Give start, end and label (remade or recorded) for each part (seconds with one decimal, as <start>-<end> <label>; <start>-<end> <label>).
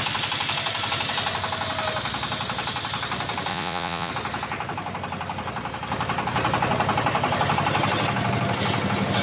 0.0-3.5 recorded; 3.5-4.1 remade; 4.1-9.2 recorded